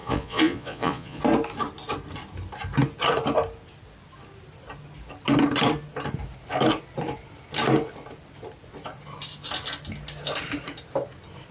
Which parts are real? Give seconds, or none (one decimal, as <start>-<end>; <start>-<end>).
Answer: 1.2-11.5